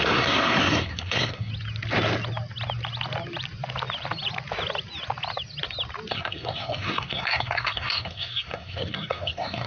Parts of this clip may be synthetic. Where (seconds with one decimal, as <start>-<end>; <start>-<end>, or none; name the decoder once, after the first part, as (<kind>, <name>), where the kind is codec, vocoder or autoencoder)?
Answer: 0.0-1.5 (codec, SNAC); 6.1-9.7